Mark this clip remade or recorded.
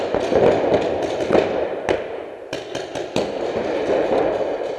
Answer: recorded